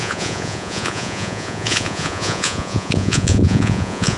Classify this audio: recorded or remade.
remade